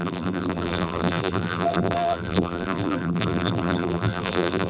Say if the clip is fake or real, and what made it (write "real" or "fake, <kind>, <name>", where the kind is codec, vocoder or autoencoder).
fake, vocoder, BigVGAN v2